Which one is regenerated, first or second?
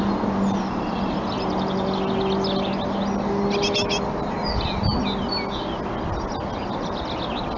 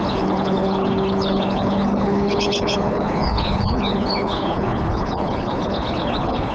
second